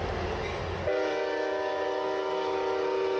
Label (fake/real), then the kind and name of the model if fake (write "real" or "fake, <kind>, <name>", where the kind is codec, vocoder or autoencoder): real